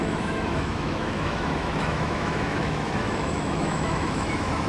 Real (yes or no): no